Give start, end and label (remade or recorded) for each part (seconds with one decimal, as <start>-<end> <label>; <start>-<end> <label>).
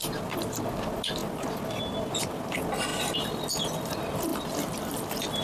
0.0-4.3 recorded; 4.3-5.4 remade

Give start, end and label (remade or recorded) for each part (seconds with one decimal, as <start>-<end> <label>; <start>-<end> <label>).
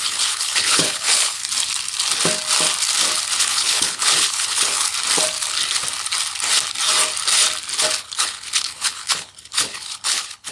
0.0-1.4 remade; 1.4-3.4 recorded; 3.4-4.9 remade; 4.9-8.0 recorded; 8.0-10.5 remade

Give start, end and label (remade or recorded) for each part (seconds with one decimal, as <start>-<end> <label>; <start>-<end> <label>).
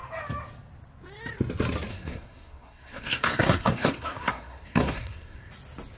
0.0-1.9 recorded; 1.9-5.5 remade; 5.5-6.0 recorded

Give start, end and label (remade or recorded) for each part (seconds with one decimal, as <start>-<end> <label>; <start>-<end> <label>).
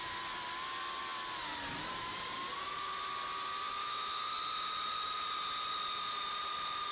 0.0-3.8 recorded; 3.8-4.3 remade; 4.3-6.9 recorded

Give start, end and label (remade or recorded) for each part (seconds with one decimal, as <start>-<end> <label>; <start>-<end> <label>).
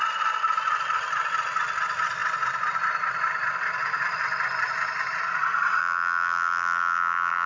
0.0-5.8 recorded; 5.8-7.5 remade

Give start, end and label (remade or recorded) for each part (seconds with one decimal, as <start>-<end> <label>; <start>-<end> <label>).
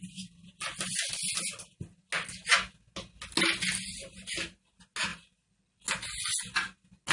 0.0-7.1 recorded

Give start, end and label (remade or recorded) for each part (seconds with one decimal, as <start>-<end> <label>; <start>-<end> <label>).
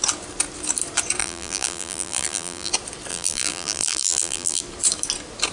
0.0-1.2 recorded; 1.2-2.7 remade; 2.7-3.1 recorded; 3.1-4.6 remade; 4.6-5.5 recorded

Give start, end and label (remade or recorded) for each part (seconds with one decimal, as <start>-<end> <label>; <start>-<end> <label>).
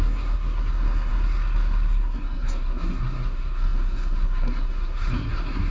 0.0-5.7 remade